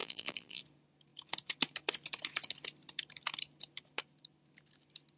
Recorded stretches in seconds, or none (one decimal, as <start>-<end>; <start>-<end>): 0.6-5.2